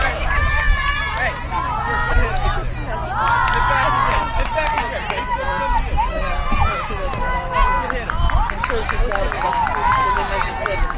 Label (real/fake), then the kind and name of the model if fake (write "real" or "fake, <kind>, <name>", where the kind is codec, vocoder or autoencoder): real